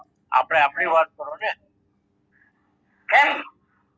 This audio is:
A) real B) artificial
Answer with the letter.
A